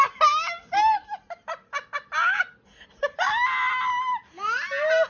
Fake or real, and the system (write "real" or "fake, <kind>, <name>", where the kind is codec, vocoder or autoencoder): real